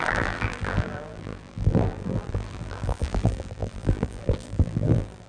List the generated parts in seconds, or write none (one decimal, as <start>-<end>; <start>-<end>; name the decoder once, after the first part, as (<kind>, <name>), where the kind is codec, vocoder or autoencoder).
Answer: 0.0-5.3 (vocoder, BigVGAN v2)